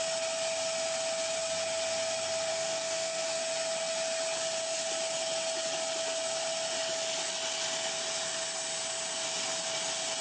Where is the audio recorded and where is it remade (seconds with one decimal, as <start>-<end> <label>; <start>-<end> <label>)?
0.0-2.5 recorded; 2.5-3.4 remade; 3.4-10.2 recorded